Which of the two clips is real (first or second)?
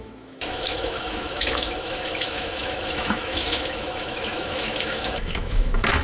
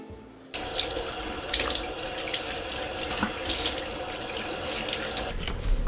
second